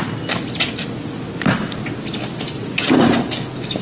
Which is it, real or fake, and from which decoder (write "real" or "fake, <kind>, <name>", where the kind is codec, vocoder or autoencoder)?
real